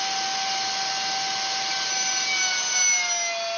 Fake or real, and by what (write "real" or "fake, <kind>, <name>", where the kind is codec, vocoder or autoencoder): real